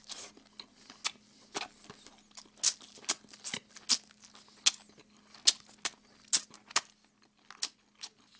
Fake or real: real